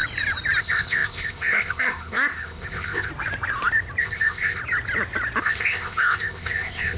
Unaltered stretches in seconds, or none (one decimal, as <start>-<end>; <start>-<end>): 0.0-0.6; 3.1-4.0; 4.6-5.4